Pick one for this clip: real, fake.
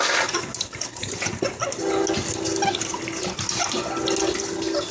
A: real